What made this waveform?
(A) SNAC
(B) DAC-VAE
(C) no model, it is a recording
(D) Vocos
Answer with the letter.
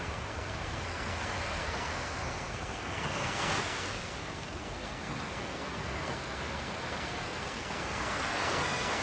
A